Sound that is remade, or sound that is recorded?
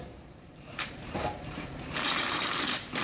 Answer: remade